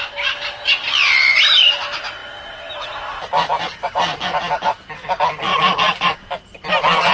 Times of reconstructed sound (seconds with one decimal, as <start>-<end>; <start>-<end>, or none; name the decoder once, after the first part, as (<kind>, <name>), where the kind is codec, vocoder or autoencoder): none